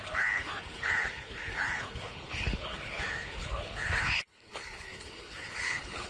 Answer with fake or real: fake